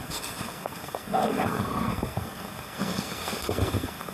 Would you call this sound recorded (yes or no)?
no